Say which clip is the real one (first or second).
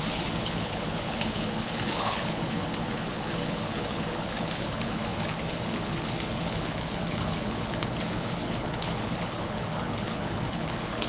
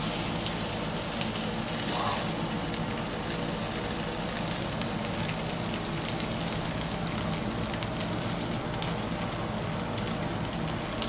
second